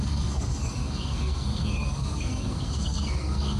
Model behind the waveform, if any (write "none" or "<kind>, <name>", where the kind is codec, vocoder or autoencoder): codec, SNAC